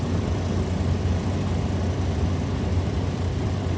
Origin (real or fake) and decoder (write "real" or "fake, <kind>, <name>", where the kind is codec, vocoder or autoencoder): fake, vocoder, BigVGAN v2